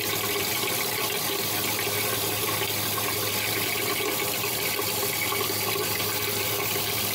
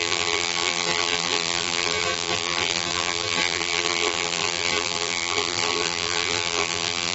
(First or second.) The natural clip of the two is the first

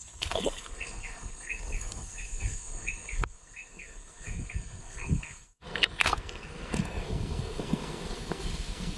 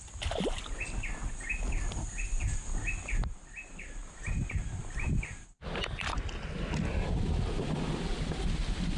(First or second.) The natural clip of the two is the second